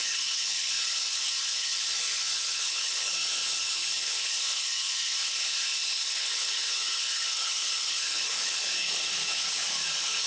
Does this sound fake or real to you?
fake